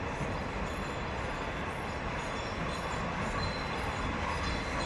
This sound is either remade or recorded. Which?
recorded